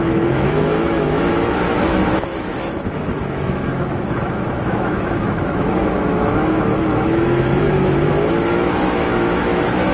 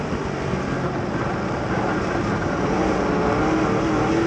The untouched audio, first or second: second